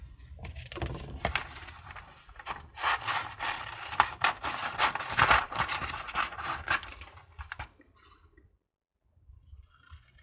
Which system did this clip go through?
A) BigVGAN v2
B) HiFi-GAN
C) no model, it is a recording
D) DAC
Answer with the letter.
A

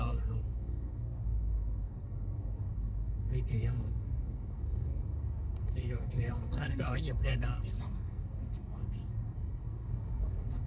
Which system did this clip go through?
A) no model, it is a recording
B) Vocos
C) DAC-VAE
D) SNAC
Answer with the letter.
D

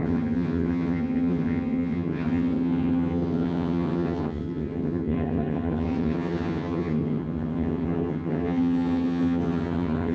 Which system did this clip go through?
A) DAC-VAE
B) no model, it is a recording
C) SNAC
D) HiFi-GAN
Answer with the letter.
D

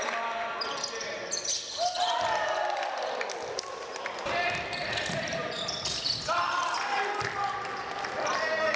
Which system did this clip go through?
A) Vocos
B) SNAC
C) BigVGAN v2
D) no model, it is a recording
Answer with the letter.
D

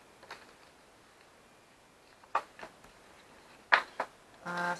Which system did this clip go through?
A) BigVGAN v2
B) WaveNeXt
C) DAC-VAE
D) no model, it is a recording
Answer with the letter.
D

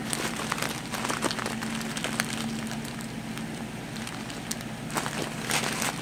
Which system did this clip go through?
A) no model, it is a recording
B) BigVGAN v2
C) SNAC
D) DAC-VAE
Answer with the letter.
A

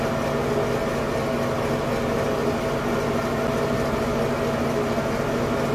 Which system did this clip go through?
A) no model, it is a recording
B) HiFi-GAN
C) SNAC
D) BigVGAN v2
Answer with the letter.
A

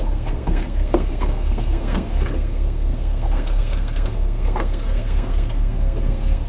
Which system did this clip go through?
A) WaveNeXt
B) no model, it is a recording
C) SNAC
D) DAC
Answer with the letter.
C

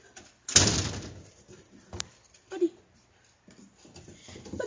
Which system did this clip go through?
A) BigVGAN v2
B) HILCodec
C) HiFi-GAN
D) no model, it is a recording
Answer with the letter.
D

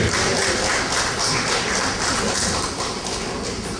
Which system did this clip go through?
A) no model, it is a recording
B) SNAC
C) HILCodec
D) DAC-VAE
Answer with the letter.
A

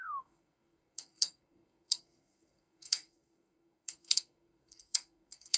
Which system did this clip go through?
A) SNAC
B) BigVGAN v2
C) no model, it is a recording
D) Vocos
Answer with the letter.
A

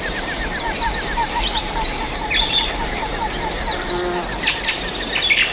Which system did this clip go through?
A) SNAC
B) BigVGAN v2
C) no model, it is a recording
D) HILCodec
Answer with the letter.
B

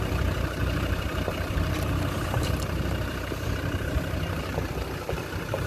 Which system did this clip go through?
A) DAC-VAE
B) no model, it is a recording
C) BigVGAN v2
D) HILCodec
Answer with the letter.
C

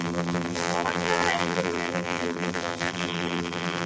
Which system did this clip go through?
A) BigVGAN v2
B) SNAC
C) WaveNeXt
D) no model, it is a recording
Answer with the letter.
A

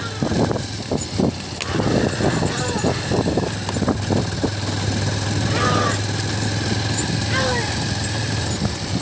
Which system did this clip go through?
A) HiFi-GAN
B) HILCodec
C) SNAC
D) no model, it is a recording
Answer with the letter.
D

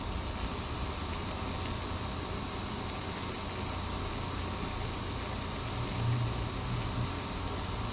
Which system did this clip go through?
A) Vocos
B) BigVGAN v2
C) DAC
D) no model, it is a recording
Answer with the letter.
D